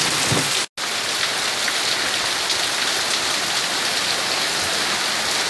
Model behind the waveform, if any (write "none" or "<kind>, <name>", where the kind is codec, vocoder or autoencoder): none